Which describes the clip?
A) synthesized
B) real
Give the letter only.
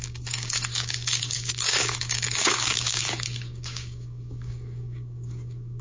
A